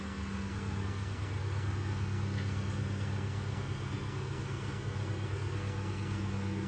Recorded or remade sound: remade